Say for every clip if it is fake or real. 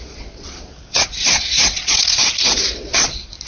fake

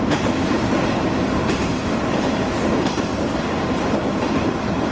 fake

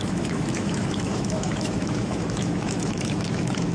fake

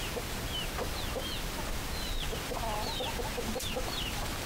real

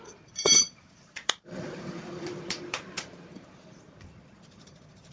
fake